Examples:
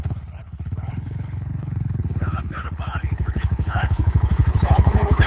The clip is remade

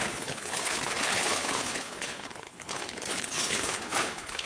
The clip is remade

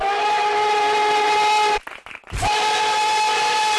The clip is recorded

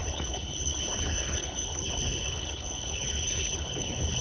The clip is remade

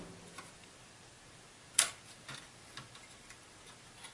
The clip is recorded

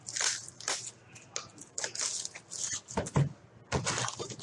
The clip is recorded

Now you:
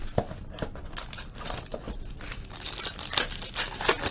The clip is recorded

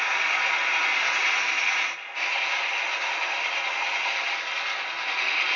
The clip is recorded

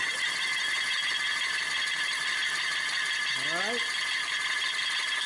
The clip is recorded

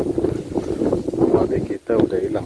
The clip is recorded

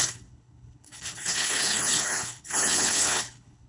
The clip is remade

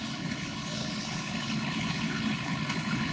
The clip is remade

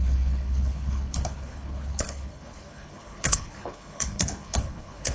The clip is remade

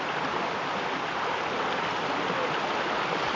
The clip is recorded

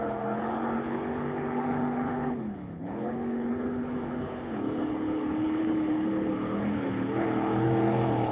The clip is remade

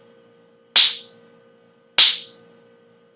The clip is recorded